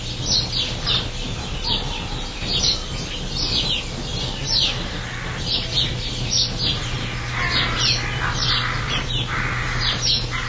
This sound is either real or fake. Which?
real